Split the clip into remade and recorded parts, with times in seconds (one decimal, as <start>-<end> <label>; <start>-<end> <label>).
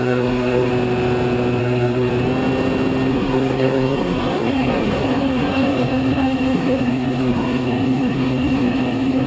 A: 0.0-0.7 remade; 0.7-1.6 recorded; 1.6-2.1 remade; 2.1-3.1 recorded; 3.1-9.3 remade